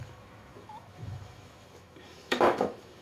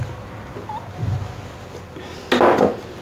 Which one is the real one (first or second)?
second